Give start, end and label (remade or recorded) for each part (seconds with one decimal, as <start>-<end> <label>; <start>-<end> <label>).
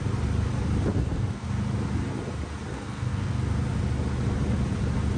0.0-0.9 recorded; 0.9-1.5 remade; 1.5-2.7 recorded; 2.7-3.4 remade; 3.4-5.2 recorded